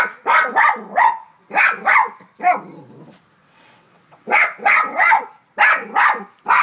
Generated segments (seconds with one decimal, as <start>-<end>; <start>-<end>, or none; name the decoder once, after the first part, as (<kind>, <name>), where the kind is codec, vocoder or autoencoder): 0.9-1.6 (vocoder, WaveNeXt); 3.4-5.2